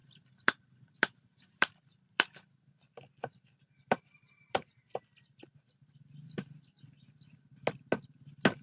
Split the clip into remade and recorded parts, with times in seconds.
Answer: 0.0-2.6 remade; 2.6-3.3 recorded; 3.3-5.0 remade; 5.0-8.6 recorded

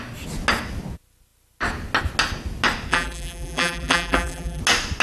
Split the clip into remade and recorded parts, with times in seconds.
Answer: 0.0-2.9 recorded; 2.9-4.6 remade; 4.6-5.0 recorded

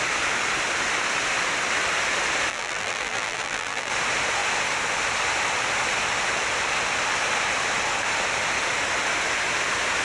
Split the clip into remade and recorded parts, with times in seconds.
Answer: 0.0-2.5 recorded; 2.5-3.9 remade; 3.9-10.0 recorded

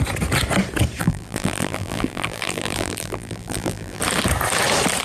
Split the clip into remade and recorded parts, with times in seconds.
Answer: 0.0-1.0 recorded; 1.0-4.0 remade; 4.0-5.0 recorded

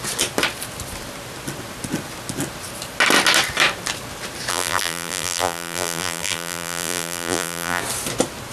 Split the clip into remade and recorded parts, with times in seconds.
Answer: 0.0-4.5 recorded; 4.5-7.8 remade; 7.8-8.5 recorded

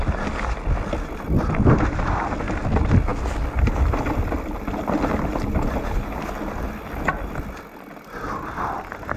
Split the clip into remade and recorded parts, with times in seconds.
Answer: 0.0-9.2 recorded